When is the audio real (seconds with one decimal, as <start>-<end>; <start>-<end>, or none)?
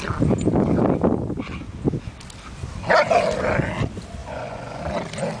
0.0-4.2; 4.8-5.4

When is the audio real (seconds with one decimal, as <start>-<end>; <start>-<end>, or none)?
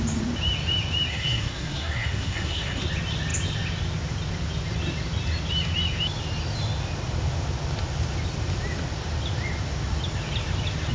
0.0-1.1; 2.8-10.9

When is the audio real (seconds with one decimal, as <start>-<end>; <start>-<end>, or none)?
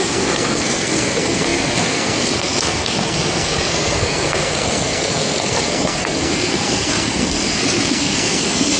none